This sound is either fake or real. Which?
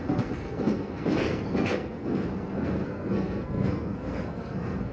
fake